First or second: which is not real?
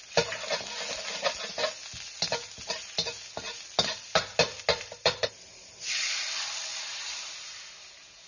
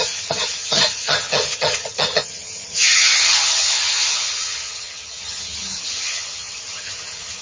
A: second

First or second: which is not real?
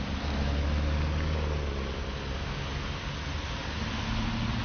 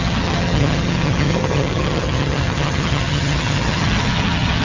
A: second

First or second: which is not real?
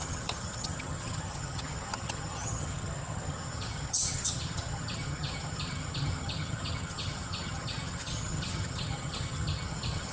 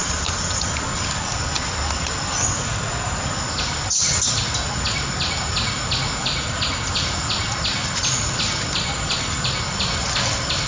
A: first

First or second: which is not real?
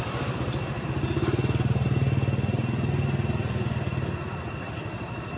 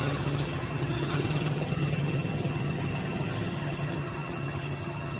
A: second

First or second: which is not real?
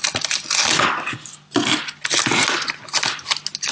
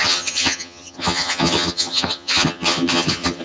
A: second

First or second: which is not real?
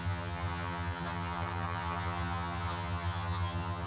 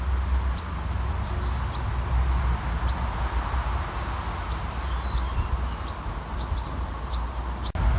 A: first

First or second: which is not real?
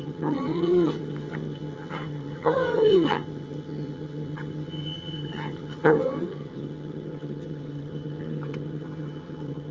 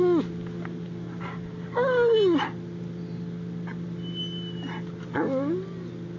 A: first